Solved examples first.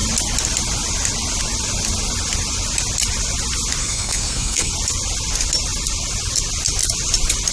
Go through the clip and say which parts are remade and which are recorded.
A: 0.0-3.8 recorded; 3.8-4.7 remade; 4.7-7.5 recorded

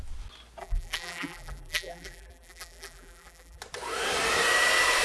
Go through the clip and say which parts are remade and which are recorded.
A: 0.0-0.6 recorded; 0.6-3.6 remade; 3.6-5.0 recorded

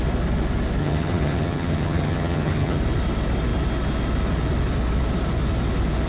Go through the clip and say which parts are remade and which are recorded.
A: 0.0-0.8 recorded; 0.8-2.8 remade; 2.8-6.1 recorded

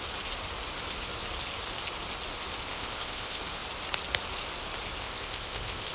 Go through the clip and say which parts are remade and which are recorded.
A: 0.0-2.7 recorded; 2.7-3.4 remade; 3.4-5.0 recorded; 5.0-5.9 remade